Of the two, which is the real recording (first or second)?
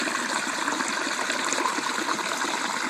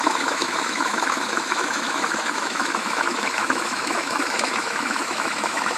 first